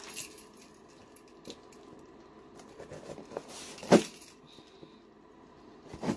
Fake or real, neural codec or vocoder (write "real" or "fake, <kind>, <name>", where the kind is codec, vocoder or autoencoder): real